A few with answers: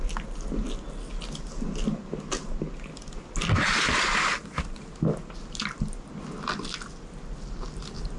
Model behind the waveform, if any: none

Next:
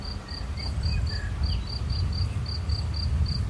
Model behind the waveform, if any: none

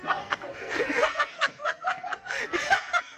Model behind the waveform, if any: codec, SNAC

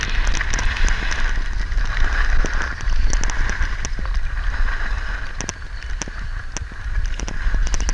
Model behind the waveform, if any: none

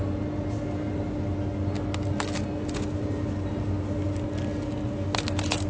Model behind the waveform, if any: none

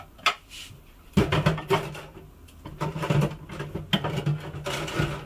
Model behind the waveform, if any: none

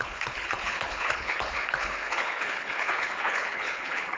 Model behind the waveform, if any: codec, HILCodec